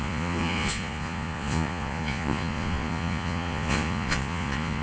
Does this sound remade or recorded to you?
remade